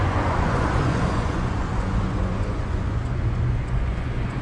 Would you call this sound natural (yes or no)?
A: no